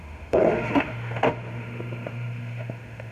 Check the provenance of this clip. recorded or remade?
remade